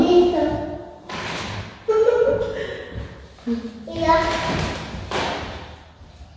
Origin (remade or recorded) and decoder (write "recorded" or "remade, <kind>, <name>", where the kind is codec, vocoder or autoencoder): recorded